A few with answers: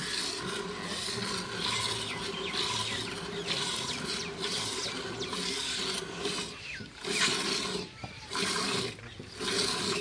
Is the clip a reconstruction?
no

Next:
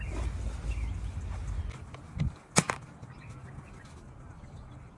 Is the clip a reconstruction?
no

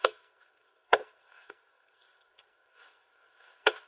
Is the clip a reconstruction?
yes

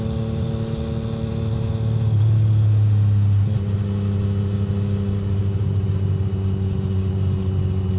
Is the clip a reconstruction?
no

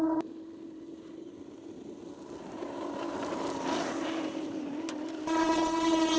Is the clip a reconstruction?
no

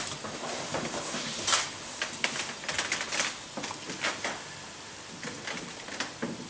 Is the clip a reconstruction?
no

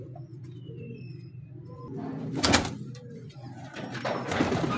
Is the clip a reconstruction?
no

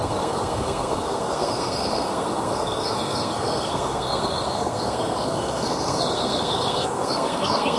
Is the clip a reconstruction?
yes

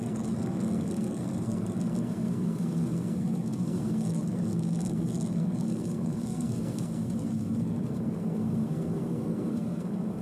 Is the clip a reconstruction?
yes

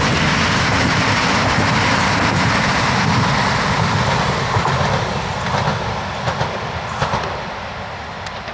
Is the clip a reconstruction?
no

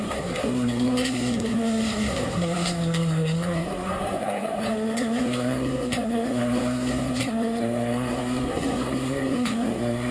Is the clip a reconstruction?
yes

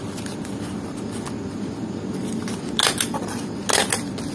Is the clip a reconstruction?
no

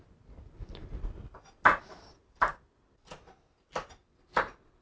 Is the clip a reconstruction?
no